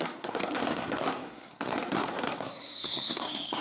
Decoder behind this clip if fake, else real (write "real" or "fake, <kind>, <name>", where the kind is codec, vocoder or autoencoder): fake, codec, SNAC